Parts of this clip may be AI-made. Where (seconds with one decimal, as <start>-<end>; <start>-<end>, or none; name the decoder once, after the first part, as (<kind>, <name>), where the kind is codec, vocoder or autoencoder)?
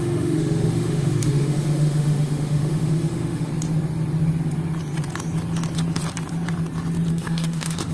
0.0-3.5 (autoencoder, DAC-VAE); 7.1-7.9